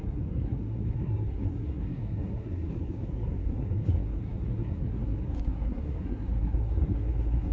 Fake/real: fake